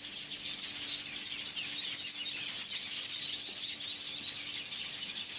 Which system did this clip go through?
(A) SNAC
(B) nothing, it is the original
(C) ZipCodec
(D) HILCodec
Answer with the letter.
B